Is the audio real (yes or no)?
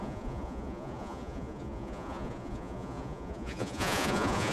no